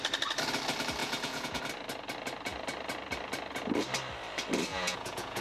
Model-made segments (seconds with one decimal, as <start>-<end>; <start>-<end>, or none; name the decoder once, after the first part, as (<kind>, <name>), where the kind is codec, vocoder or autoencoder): 1.0-1.6 (vocoder, Vocos); 4.7-5.4